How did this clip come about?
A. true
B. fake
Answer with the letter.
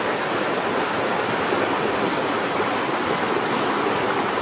A